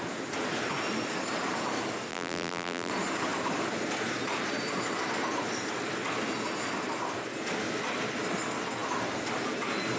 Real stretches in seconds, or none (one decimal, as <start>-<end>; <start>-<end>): 0.0-2.1; 2.9-10.0